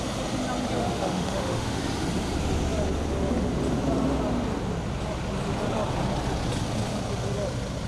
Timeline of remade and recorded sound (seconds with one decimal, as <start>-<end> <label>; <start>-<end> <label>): 0.0-0.8 recorded; 0.8-1.8 remade; 1.8-7.9 recorded